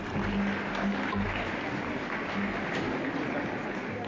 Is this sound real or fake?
real